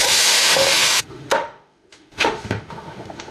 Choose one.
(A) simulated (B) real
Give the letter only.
A